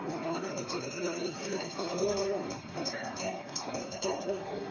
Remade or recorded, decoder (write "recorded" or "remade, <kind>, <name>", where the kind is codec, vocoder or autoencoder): remade, codec, SNAC